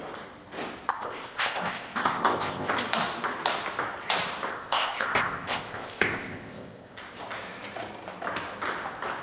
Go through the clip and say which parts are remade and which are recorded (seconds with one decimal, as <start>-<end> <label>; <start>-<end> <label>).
0.0-0.9 recorded; 0.9-2.7 remade; 2.7-4.5 recorded; 4.5-7.0 remade; 7.0-9.2 recorded